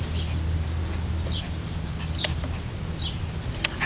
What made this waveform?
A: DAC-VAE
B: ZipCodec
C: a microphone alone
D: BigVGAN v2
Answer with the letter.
C